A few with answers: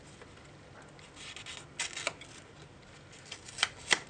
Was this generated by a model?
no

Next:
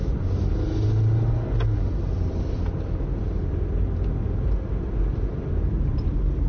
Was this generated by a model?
no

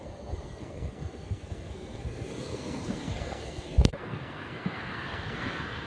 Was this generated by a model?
yes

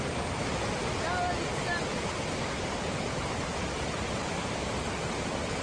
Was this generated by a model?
no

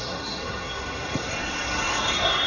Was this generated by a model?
yes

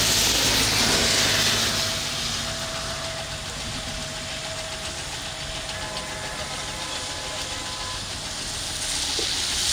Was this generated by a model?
no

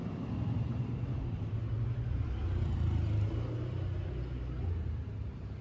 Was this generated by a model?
no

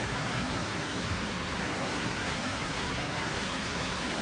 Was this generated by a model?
yes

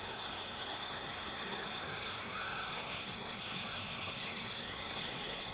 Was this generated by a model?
yes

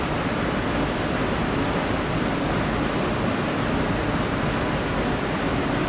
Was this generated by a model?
no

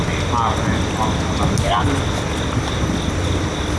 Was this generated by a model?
no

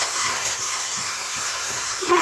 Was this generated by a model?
yes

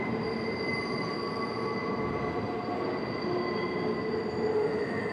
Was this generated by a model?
no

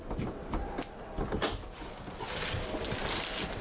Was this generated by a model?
no